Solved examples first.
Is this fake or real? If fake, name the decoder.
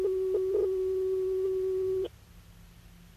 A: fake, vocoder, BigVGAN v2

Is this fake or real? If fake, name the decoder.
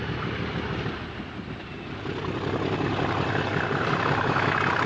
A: real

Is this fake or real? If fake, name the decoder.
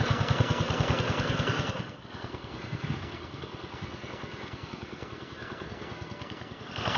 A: fake, codec, SNAC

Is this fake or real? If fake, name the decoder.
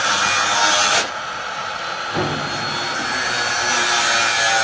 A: real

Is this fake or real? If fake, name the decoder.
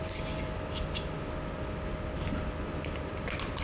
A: real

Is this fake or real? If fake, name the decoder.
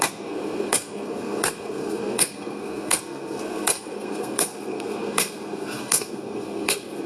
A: fake, codec, SNAC